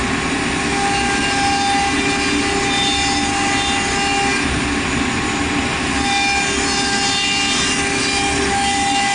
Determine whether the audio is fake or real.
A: real